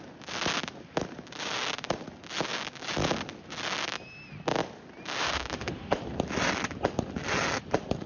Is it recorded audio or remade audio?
recorded